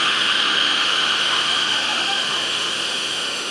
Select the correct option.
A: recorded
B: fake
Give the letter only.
B